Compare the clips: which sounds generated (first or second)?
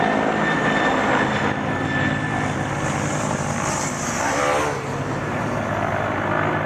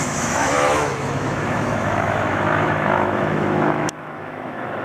second